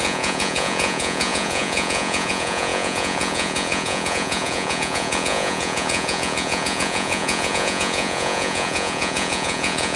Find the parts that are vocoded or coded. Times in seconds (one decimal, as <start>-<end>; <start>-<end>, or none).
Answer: 0.0-10.0